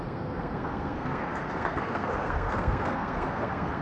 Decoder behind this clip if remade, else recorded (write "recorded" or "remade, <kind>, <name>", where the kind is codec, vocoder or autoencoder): remade, codec, SNAC